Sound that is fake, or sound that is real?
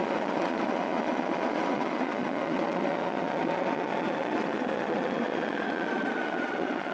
fake